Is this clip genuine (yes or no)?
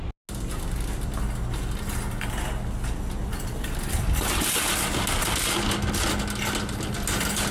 yes